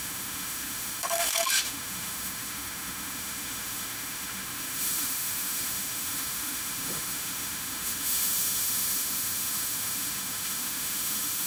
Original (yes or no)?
no